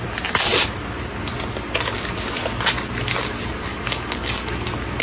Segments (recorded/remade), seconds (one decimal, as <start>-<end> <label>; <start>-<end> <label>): 0.0-3.7 recorded; 3.7-4.5 remade; 4.5-5.0 recorded